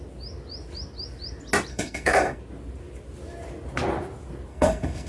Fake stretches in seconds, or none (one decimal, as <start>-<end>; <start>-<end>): 1.7-2.4; 4.5-5.1